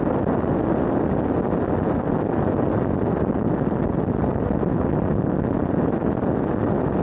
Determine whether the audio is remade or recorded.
recorded